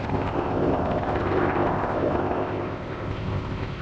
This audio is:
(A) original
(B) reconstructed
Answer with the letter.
B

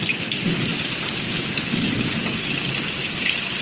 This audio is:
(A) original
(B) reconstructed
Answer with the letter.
A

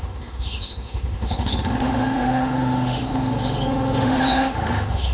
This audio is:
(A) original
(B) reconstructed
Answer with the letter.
B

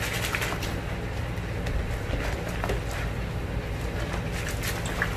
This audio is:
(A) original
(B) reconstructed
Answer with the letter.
A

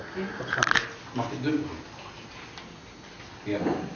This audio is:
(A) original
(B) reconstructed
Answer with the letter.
A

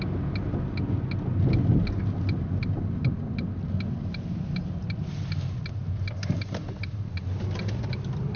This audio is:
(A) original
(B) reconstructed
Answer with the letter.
A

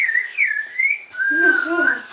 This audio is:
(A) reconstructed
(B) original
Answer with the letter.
A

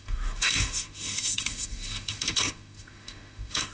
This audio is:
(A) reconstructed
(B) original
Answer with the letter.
A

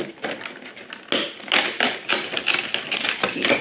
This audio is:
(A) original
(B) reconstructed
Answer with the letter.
A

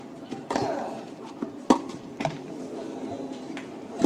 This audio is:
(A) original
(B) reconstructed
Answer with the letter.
A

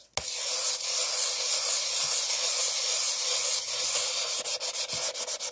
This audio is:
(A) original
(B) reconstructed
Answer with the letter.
A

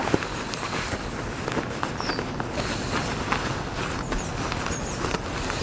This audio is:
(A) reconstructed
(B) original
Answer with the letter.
B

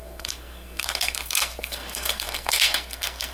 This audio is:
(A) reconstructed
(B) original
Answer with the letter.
A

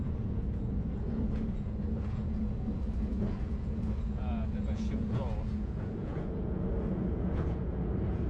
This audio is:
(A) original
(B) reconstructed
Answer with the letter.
B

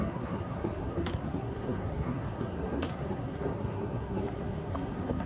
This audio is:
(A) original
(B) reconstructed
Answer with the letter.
B